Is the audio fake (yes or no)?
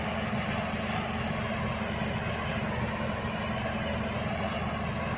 no